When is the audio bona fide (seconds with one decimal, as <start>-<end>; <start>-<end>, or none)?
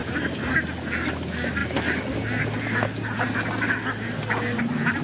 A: 0.0-5.0